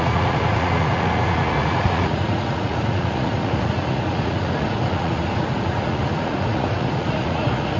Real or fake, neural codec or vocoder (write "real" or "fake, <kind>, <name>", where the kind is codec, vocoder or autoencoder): fake, vocoder, Vocos